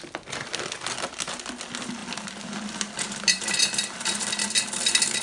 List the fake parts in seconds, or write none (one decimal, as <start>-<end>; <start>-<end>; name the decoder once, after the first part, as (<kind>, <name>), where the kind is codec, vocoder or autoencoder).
none